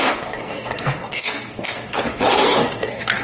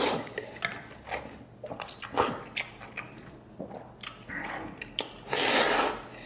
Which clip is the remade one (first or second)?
first